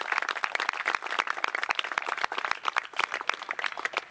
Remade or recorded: recorded